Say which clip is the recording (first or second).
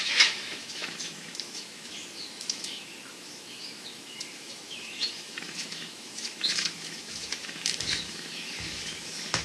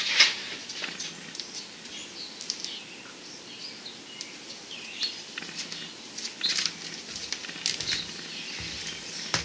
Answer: second